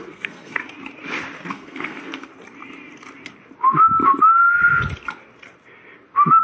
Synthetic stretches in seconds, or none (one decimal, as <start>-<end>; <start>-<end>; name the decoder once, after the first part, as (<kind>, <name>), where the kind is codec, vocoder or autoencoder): 0.0-0.6 (codec, SNAC); 1.5-2.3